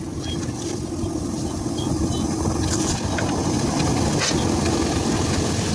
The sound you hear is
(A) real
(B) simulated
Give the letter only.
A